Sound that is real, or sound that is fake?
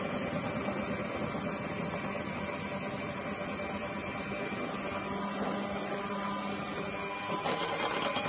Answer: real